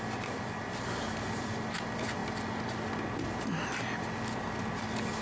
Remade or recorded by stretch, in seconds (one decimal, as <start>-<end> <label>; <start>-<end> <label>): 0.0-5.2 recorded